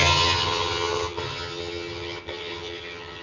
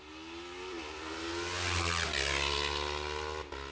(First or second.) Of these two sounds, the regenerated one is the first